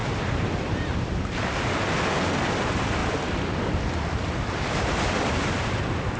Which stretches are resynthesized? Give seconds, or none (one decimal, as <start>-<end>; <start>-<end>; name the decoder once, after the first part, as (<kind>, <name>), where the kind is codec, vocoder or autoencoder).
none